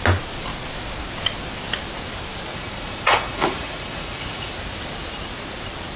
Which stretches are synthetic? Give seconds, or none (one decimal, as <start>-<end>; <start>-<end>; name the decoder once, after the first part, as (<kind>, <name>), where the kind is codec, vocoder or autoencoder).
2.5-4.5 (vocoder, Vocos)